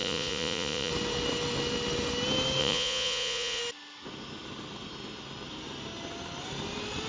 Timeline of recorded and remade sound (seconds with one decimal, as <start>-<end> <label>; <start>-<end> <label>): 0.0-0.9 remade; 0.9-2.6 recorded; 2.6-3.6 remade; 3.6-7.1 recorded